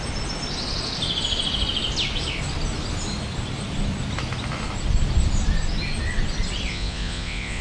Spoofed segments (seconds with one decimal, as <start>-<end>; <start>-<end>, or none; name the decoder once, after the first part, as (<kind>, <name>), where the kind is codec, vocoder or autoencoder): 6.7-7.6 (vocoder, Vocos)